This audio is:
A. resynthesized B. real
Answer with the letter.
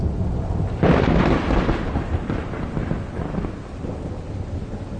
B